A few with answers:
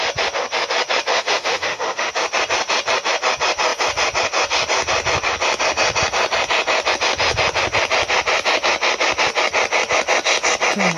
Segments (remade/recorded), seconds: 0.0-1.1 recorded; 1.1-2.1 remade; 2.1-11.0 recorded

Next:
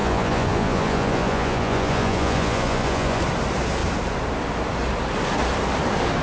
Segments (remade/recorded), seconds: 0.0-3.2 remade; 3.2-6.2 recorded

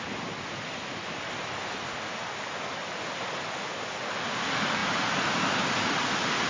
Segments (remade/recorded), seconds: 0.0-6.5 recorded

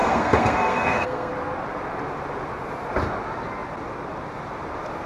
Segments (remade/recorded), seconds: 0.0-1.3 remade; 1.3-5.1 recorded

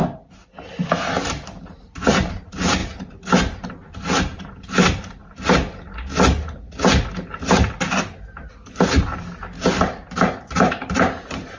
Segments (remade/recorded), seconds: 0.0-0.7 recorded; 0.7-5.2 remade; 5.2-8.8 recorded; 8.8-11.6 remade